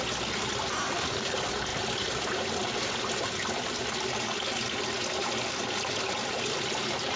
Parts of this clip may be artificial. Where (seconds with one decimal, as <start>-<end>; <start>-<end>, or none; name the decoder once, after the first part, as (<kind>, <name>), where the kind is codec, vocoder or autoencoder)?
none